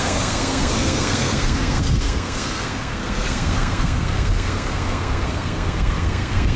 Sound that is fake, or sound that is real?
fake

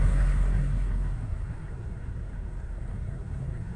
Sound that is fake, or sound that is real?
fake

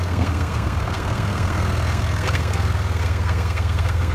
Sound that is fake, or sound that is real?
fake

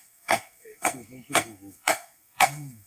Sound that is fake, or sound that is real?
fake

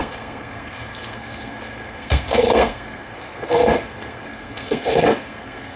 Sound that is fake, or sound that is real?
fake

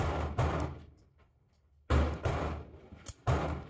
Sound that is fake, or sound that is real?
real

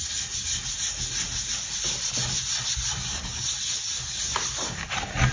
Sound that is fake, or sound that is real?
real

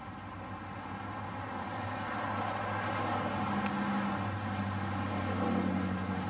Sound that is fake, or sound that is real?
real